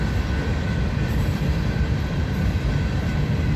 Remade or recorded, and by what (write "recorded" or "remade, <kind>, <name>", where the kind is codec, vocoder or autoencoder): recorded